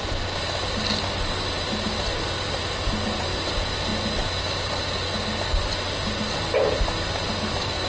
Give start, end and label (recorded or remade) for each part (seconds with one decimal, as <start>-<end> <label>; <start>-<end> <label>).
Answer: 0.0-7.9 recorded